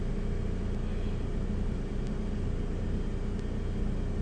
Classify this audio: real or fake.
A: real